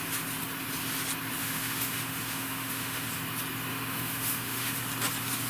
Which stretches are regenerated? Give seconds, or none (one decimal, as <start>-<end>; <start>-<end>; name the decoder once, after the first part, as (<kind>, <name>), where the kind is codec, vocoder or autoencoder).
1.4-3.1 (autoencoder, DAC-VAE); 3.7-4.8